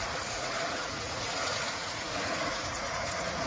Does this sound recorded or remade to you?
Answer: remade